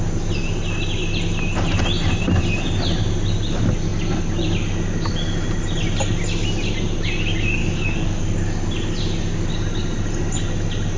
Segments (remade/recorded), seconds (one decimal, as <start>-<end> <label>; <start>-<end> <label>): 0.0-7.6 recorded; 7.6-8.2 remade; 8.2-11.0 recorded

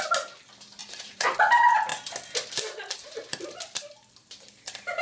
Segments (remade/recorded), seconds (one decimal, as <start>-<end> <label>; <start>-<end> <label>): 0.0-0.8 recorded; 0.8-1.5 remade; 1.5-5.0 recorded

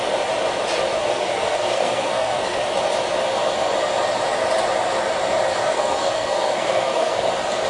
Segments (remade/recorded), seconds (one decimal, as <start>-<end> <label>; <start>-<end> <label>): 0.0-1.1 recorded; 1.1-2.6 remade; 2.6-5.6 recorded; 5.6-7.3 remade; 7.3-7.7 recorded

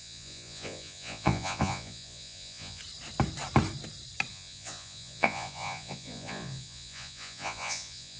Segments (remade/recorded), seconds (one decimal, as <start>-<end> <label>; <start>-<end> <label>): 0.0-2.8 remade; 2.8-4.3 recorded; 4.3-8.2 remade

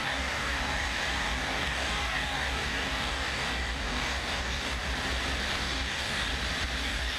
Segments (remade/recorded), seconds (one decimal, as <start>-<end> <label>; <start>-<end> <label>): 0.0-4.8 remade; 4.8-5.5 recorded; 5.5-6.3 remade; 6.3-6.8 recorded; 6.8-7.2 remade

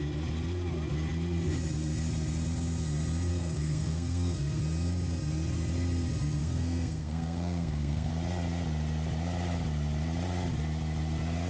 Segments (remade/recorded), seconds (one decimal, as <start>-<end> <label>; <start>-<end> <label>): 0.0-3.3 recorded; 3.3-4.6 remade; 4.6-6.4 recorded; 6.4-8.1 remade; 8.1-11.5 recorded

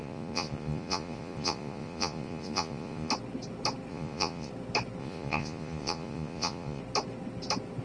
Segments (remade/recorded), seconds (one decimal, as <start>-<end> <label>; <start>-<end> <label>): 0.0-3.1 remade; 3.1-3.9 recorded; 3.9-4.5 remade; 4.5-5.0 recorded; 5.0-6.8 remade; 6.8-7.8 recorded

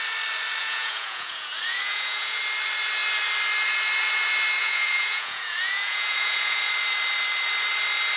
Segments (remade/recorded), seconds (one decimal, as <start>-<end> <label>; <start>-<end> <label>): 0.0-0.6 recorded; 0.6-2.4 remade; 2.4-4.6 recorded; 4.6-6.7 remade; 6.7-8.2 recorded